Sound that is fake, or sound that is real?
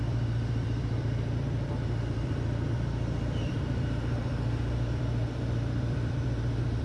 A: fake